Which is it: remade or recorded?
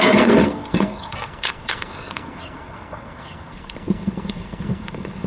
remade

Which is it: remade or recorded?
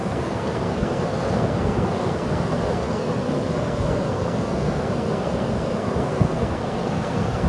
remade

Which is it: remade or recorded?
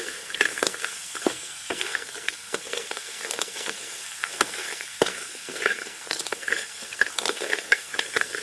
remade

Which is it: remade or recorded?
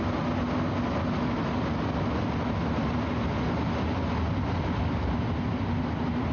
recorded